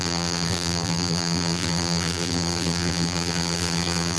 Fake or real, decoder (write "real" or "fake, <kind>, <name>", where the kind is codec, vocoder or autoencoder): fake, vocoder, BigVGAN v2